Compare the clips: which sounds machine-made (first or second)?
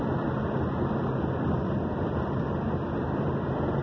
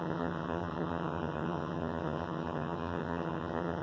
second